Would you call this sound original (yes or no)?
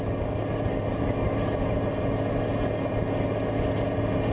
yes